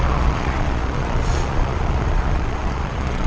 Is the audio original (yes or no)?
no